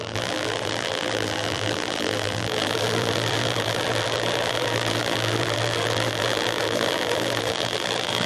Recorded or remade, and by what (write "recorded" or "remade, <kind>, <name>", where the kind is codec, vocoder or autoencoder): remade, vocoder, BigVGAN v2